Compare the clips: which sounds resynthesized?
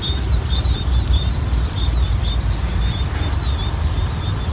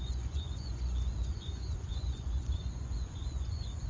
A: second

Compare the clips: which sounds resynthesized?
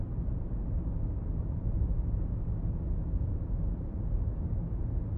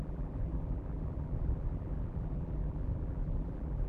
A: second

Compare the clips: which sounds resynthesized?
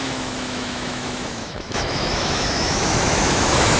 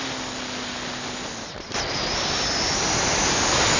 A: first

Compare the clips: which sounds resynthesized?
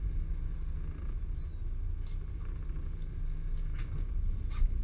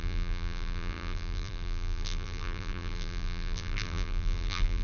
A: second